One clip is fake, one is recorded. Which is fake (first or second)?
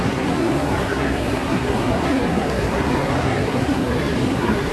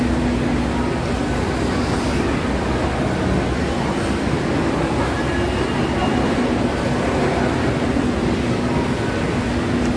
first